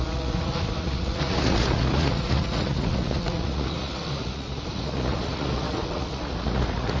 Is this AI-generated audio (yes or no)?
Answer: yes